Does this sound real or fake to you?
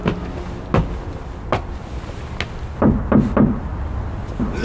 real